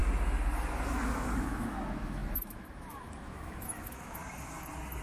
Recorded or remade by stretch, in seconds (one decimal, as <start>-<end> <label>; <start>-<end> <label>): 0.0-0.9 recorded; 0.9-4.2 remade; 4.2-5.0 recorded